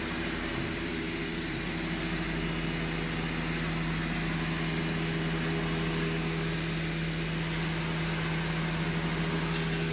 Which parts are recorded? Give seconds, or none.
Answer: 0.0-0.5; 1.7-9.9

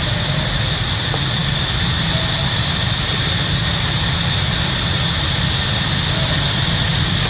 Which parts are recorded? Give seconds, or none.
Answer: 0.0-7.3

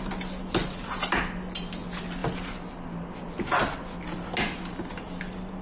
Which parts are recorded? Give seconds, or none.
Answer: 0.0-5.6